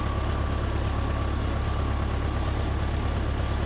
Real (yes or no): yes